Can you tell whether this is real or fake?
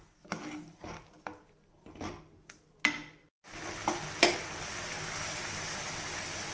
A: real